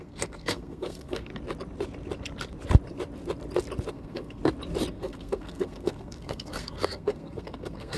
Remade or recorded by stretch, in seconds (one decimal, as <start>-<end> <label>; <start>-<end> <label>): 0.0-1.3 remade; 1.3-3.9 recorded; 3.9-4.4 remade; 4.4-4.9 recorded; 4.9-8.0 remade